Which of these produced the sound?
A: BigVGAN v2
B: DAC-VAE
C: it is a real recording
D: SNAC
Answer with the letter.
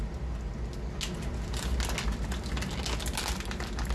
C